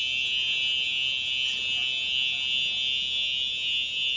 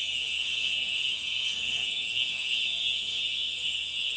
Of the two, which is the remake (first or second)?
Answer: second